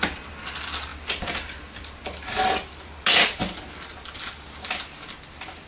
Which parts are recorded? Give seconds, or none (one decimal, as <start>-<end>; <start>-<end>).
0.0-5.7